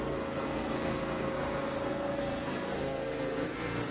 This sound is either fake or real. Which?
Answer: fake